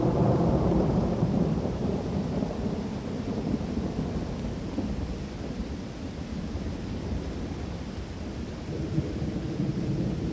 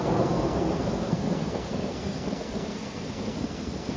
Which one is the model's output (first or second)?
second